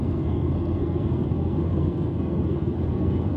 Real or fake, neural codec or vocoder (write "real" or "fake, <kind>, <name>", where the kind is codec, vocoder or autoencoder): fake, codec, SNAC